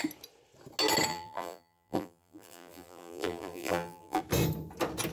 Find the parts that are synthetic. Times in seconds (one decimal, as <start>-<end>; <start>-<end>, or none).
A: 1.1-4.2